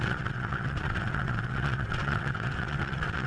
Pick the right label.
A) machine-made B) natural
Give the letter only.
A